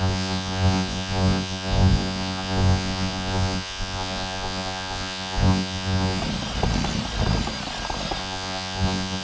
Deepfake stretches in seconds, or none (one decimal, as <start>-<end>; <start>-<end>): 0.0-6.2; 8.2-9.2